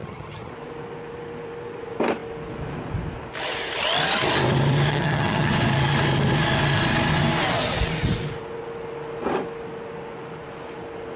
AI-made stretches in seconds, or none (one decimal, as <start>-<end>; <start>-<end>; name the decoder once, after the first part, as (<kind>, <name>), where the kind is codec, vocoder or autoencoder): 0.0-0.5 (vocoder, HiFi-GAN); 4.9-5.5